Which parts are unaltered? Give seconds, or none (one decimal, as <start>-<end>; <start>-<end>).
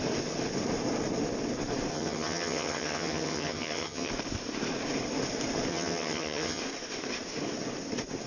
0.0-1.9; 4.1-5.7; 6.6-8.3